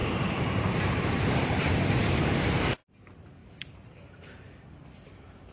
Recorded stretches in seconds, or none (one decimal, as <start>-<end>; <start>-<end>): 2.5-3.4; 4.4-5.5